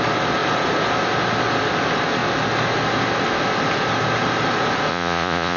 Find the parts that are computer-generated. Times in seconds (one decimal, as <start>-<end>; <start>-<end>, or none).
4.9-5.6